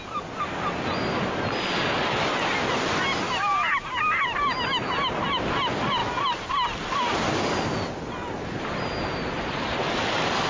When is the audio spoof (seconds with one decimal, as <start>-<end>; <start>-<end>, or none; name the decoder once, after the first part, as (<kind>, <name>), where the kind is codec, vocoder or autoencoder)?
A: none